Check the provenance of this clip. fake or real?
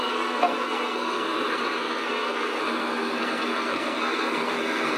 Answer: fake